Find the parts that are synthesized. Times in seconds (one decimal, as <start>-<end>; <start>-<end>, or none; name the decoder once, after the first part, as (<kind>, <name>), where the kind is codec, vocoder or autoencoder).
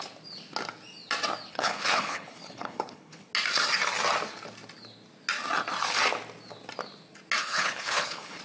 1.5-3.3 (codec, HILCodec); 7.4-8.4